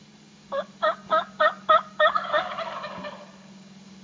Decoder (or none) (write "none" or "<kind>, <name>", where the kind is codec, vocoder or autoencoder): codec, DAC